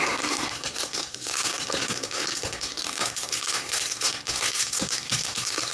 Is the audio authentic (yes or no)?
no